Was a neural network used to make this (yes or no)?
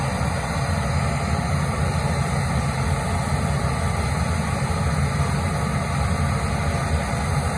no